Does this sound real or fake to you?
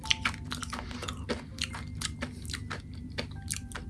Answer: real